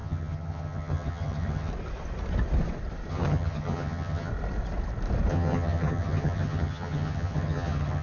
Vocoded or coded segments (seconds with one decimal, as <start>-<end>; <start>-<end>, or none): 0.0-1.7; 3.1-4.3; 5.3-8.0